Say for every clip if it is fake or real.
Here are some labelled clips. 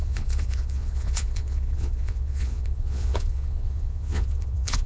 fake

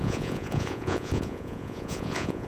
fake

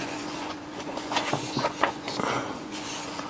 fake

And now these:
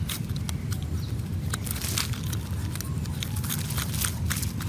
real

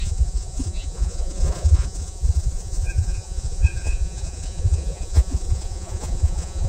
fake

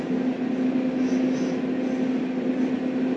real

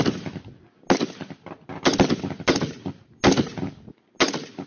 real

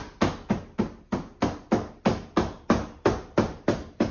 real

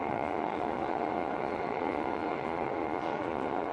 fake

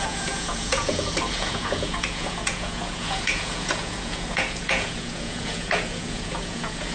fake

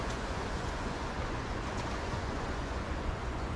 fake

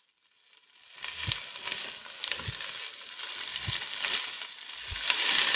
real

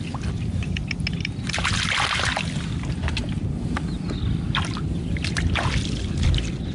real